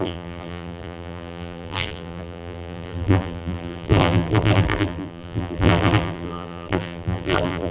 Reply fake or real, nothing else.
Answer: fake